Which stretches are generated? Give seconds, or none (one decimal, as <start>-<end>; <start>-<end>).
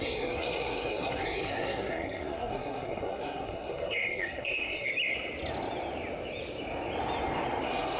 0.0-4.9; 7.6-8.0